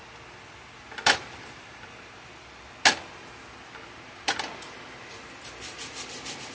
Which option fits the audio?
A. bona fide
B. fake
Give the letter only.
A